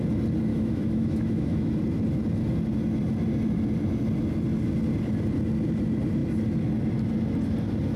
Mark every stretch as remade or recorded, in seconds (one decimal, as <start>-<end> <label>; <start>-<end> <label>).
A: 0.0-0.5 recorded; 0.5-1.7 remade; 1.7-8.0 recorded